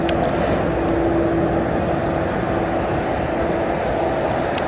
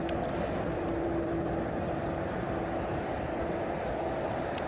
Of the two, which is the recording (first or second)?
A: first